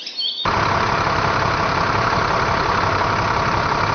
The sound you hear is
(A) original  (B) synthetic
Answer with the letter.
B